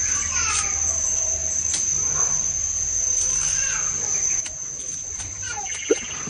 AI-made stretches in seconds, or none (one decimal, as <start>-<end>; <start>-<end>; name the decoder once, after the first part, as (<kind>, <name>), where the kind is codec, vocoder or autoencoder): none